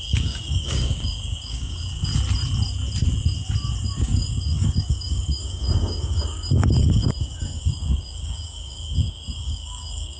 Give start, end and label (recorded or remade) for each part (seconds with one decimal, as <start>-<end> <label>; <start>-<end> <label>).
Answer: 0.0-2.1 remade; 2.1-4.0 recorded; 4.0-10.2 remade